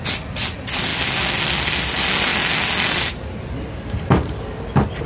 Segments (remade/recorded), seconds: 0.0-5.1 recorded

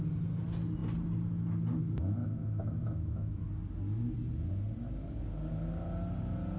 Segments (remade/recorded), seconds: 0.0-2.2 recorded; 2.2-3.5 remade; 3.5-6.6 recorded

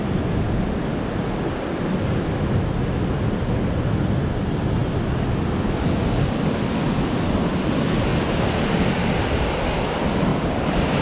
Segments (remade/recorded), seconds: 0.0-11.0 recorded

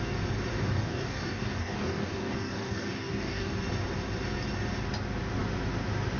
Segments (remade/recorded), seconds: 0.0-0.5 recorded; 0.5-3.5 remade; 3.5-6.2 recorded

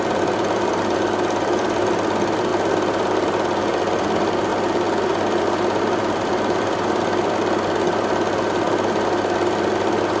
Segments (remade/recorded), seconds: 0.0-4.5 remade; 4.5-5.4 recorded; 5.4-10.2 remade

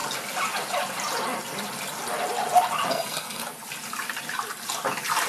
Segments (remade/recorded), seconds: 0.0-2.9 recorded; 2.9-3.4 remade; 3.4-5.3 recorded

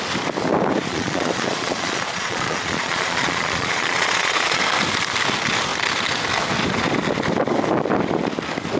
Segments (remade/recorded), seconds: 0.0-0.9 recorded; 0.9-4.6 remade; 4.6-8.8 recorded